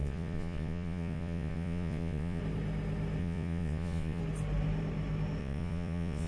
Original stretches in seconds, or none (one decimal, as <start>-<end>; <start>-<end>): 2.4-3.2; 4.2-5.4